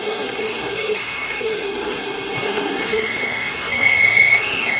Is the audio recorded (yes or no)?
no